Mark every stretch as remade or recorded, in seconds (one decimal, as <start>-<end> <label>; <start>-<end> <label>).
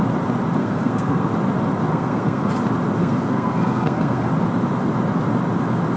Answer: 0.0-0.6 recorded; 0.6-1.3 remade; 1.3-1.9 recorded; 1.9-2.5 remade; 2.5-3.0 recorded; 3.0-4.3 remade; 4.3-6.0 recorded